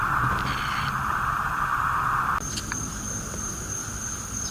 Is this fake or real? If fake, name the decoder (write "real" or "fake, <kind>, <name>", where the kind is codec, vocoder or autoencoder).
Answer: real